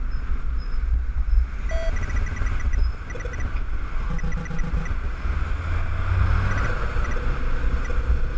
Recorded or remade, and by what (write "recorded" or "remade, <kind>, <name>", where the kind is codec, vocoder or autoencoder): recorded